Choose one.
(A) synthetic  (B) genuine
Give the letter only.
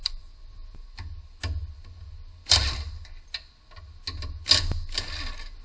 B